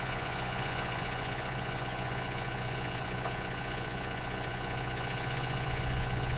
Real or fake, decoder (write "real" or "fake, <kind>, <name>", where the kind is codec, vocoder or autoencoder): fake, vocoder, Vocos